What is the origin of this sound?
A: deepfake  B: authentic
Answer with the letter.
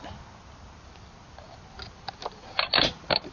B